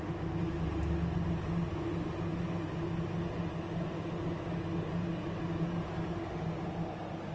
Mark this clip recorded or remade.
recorded